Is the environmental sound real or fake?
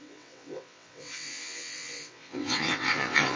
fake